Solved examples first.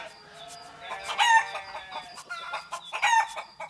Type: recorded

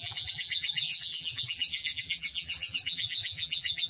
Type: remade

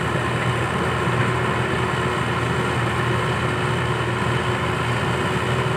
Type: recorded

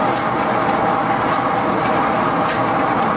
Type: recorded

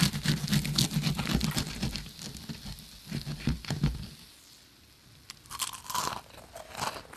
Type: recorded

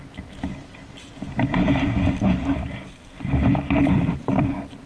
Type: remade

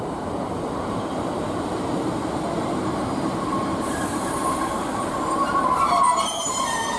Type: remade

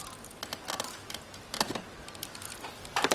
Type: recorded